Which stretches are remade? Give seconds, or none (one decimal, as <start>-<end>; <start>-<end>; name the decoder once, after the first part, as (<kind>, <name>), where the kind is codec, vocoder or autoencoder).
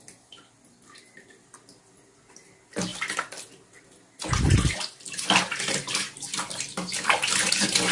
none